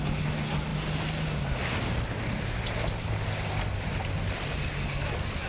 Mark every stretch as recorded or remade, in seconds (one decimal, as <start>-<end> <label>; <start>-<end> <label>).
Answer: 0.0-5.5 recorded